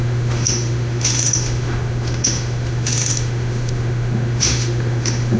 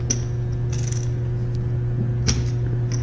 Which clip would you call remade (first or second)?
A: first